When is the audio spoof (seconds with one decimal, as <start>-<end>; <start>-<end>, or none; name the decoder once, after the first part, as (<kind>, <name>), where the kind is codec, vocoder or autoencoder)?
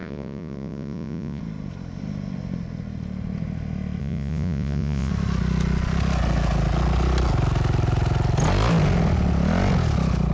0.0-1.4 (vocoder, Vocos); 4.0-5.1